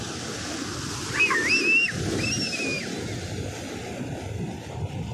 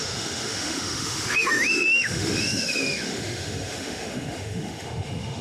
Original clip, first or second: first